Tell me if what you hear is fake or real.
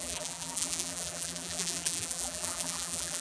fake